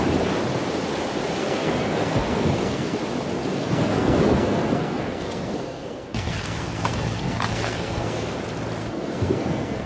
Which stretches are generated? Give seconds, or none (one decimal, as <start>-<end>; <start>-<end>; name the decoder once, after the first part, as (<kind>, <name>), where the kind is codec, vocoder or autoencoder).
1.4-3.0 (codec, SNAC); 3.4-8.4; 8.8-9.9